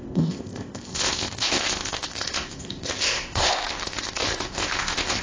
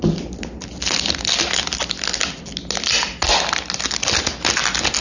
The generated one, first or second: first